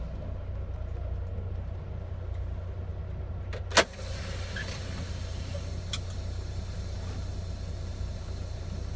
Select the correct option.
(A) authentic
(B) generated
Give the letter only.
A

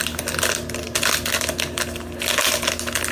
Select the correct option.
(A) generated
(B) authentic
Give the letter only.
B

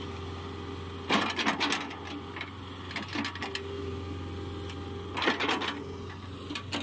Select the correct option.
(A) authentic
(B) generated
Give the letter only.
A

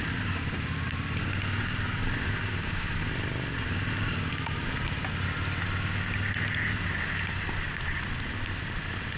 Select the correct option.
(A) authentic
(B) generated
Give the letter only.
A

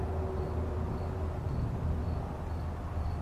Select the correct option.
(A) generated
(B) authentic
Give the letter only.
B